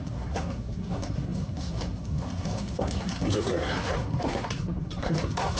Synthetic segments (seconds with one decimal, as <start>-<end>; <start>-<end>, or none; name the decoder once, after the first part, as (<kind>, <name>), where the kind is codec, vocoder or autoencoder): 0.0-5.6 (codec, SNAC)